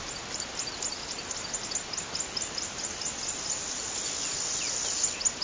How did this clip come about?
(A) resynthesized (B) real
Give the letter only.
B